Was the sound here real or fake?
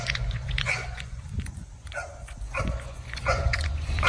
fake